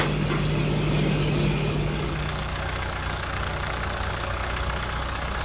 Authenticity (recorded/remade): remade